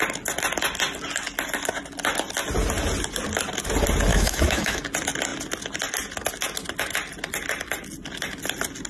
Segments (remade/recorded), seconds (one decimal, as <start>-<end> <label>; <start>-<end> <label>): 0.0-4.1 recorded; 4.1-4.8 remade; 4.8-8.9 recorded